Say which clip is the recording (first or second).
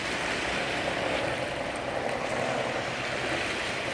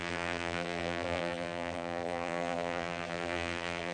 first